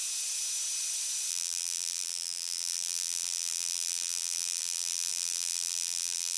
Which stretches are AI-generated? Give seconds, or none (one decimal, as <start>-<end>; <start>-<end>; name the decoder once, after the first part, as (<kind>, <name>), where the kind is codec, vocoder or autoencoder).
1.3-6.4 (vocoder, BigVGAN v2)